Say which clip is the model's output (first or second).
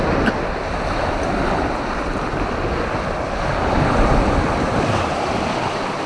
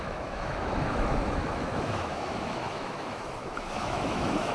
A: second